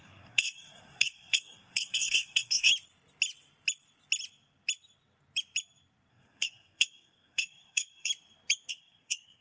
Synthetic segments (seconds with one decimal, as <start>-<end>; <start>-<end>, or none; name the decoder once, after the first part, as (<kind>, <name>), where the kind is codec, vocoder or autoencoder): 0.0-2.7 (codec, SNAC); 6.1-8.1; 8.7-9.4